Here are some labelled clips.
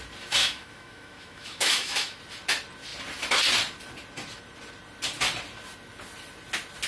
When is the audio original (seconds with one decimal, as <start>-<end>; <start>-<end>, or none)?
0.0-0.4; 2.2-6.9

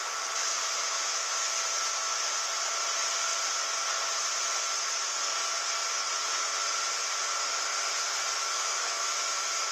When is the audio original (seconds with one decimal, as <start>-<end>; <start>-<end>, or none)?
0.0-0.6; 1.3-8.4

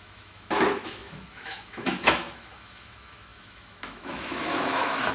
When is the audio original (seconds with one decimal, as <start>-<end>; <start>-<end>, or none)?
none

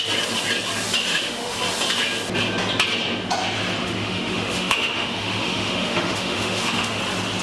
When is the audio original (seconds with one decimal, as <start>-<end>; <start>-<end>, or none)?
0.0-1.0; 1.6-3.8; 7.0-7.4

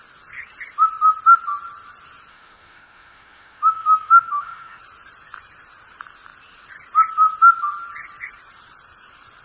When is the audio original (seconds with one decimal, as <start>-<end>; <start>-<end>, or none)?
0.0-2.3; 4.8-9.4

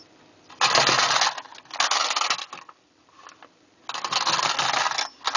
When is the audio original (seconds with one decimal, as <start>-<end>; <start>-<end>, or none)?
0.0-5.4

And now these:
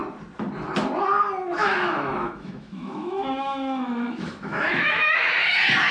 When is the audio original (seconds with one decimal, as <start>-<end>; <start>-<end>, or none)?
0.0-1.6; 5.1-5.9

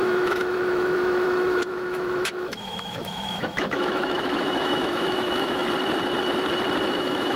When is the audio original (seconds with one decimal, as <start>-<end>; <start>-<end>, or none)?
5.6-6.9